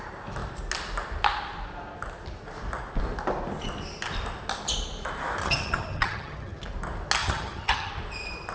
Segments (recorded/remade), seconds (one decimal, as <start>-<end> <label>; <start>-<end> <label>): 0.0-5.4 recorded; 5.4-6.6 remade; 6.6-7.2 recorded; 7.2-7.9 remade; 7.9-8.5 recorded